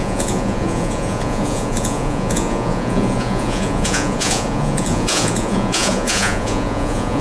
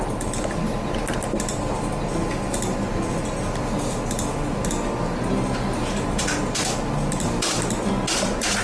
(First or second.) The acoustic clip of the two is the second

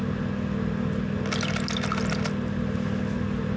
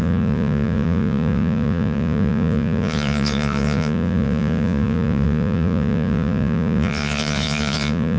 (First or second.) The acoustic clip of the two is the first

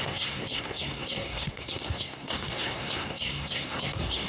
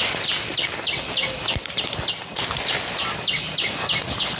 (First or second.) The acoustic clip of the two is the second